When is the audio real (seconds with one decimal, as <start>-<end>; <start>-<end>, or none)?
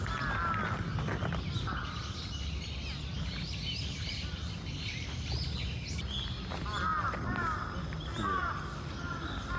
0.0-9.6